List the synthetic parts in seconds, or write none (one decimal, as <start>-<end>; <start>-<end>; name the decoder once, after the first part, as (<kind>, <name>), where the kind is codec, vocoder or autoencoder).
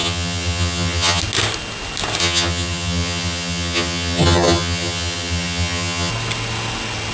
0.0-1.2 (vocoder, HiFi-GAN); 2.2-6.1